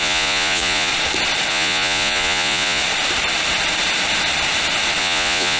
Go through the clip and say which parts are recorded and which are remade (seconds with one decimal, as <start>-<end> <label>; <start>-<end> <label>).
0.0-0.9 remade; 0.9-1.5 recorded; 1.5-2.8 remade; 2.8-5.0 recorded; 5.0-5.6 remade